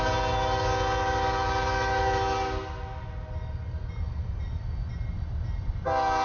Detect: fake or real real